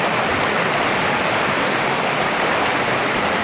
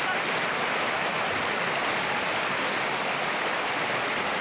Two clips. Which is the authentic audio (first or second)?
second